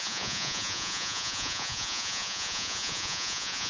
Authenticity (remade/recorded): remade